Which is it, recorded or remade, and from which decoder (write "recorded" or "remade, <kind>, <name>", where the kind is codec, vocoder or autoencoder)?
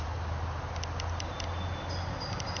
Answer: recorded